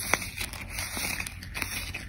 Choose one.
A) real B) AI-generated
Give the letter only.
A